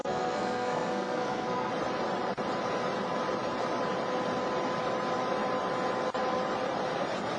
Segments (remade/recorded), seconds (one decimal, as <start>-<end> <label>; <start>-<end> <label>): 0.0-1.7 remade; 1.7-7.4 recorded